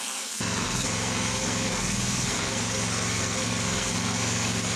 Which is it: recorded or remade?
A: remade